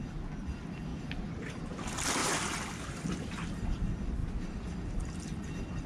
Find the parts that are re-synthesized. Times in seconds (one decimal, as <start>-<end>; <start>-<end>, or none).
0.9-1.8; 2.2-3.5; 4.2-4.8